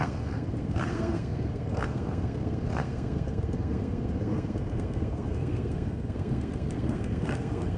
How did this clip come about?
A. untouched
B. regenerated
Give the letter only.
B